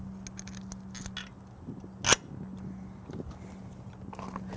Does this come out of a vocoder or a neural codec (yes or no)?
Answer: no